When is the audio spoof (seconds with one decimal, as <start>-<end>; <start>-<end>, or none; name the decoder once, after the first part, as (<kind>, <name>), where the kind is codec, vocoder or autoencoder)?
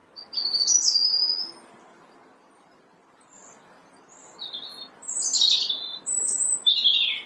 none